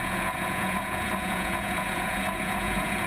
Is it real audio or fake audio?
fake